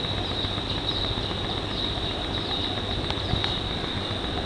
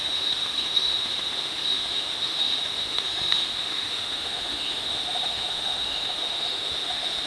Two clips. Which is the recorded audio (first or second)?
first